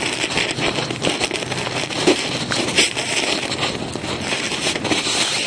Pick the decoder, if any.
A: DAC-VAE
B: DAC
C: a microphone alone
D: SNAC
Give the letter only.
C